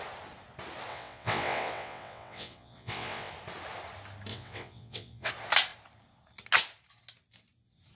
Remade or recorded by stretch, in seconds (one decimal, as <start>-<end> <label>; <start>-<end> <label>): 0.0-0.9 recorded; 0.9-3.3 remade; 3.3-4.3 recorded; 4.3-5.3 remade; 5.3-8.0 recorded